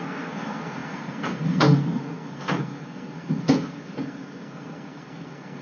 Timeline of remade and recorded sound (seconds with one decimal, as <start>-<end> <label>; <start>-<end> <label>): 0.0-5.6 remade

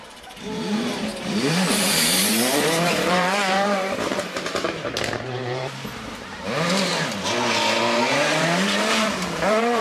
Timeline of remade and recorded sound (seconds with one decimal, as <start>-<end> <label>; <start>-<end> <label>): 0.0-6.9 remade; 6.9-7.8 recorded; 7.8-9.8 remade

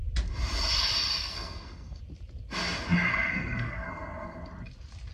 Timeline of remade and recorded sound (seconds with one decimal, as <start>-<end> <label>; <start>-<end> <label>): 0.0-1.2 recorded; 1.2-2.0 remade; 2.0-3.1 recorded; 3.1-4.4 remade; 4.4-5.1 recorded

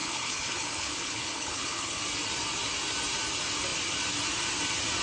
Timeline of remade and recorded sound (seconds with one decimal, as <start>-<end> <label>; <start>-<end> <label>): 0.0-2.0 remade; 2.0-5.0 recorded

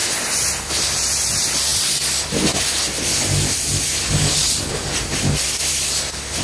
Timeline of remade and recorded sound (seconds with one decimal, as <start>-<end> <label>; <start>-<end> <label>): 0.0-6.4 recorded

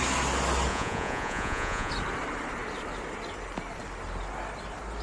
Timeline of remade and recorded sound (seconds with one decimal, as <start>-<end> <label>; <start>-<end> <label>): 0.0-0.7 recorded; 0.7-1.9 remade; 1.9-5.0 recorded

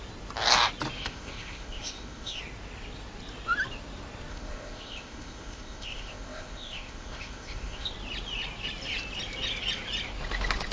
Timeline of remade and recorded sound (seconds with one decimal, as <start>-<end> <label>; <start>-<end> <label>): 0.0-1.0 recorded; 1.0-2.4 remade; 2.4-4.3 recorded; 4.3-7.9 remade; 7.9-10.7 recorded